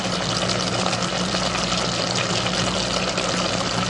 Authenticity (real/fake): real